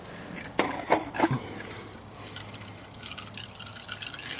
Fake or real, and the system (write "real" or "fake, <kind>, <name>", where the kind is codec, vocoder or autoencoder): real